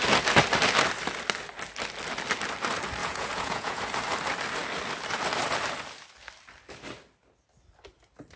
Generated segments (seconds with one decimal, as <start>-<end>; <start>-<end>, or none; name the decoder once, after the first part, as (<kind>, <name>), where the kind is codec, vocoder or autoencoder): 3.0-3.8 (vocoder, Vocos)